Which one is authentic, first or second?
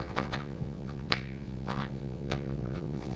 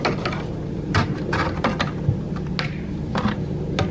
second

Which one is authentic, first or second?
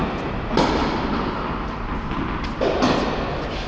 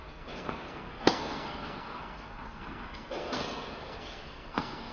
first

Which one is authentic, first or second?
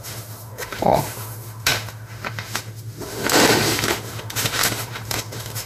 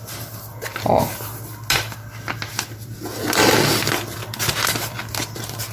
second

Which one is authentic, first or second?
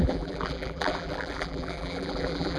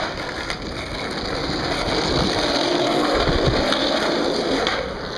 second